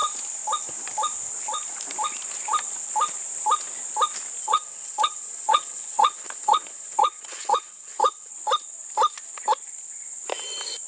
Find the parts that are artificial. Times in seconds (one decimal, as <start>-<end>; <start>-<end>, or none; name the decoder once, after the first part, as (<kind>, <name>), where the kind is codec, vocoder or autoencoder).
4.4-8.3 (vocoder, WaveNeXt)